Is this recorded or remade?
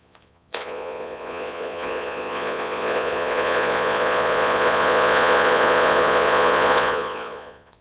remade